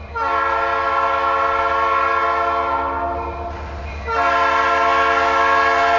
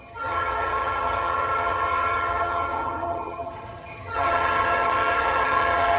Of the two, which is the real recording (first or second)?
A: first